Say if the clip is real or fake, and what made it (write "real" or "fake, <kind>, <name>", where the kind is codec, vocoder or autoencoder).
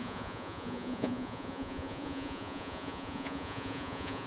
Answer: fake, vocoder, Vocos